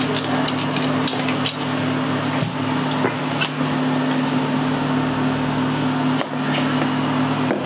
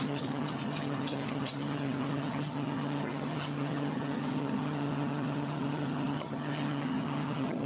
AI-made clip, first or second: second